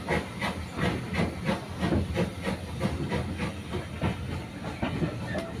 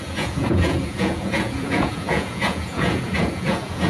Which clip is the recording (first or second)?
first